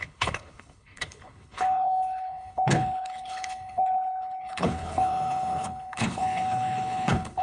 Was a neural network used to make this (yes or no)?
yes